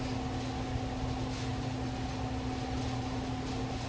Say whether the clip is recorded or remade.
recorded